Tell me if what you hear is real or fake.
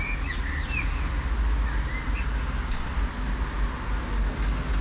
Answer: real